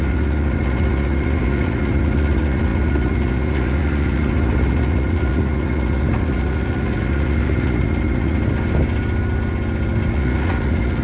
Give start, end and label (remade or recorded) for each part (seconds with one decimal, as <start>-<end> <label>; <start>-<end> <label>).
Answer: 0.0-8.4 remade; 8.4-10.1 recorded; 10.1-11.0 remade